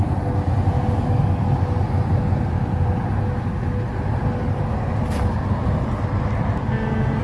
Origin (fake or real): real